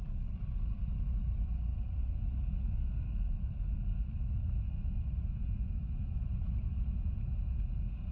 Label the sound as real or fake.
real